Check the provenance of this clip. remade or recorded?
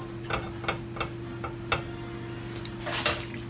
recorded